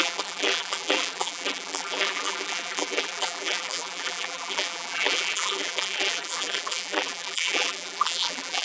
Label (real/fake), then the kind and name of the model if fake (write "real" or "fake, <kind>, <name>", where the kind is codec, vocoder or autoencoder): fake, vocoder, BigVGAN v2